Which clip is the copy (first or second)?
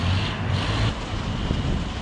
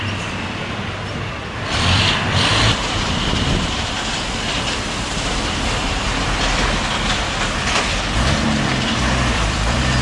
second